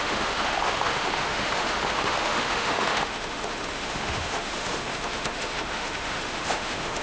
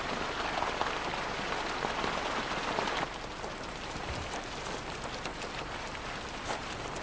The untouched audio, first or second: second